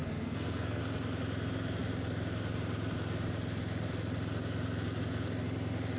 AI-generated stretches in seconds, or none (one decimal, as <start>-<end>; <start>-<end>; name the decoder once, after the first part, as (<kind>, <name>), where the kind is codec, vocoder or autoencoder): 0.0-0.8 (codec, SNAC)